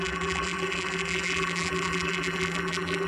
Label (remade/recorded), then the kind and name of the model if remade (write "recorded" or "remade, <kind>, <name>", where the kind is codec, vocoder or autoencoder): remade, vocoder, BigVGAN v2